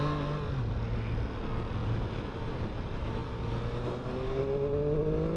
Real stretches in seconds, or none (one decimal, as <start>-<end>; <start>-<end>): 0.0-5.4